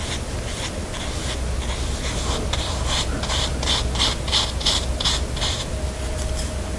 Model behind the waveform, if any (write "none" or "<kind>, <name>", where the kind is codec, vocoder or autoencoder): none